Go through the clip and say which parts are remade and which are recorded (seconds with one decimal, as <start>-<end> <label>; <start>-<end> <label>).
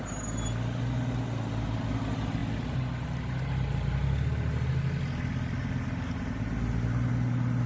0.0-7.7 recorded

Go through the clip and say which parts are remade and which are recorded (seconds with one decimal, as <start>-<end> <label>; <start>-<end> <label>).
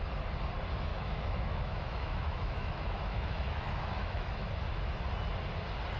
0.0-0.9 recorded; 0.9-4.5 remade; 4.5-6.0 recorded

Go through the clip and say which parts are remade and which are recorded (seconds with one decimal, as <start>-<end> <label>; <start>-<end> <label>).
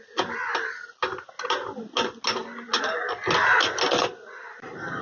0.0-5.0 recorded